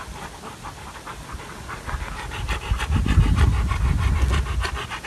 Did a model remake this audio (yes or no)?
no